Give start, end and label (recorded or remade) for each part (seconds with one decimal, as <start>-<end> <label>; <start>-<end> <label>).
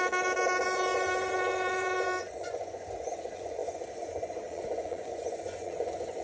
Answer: 0.0-6.2 remade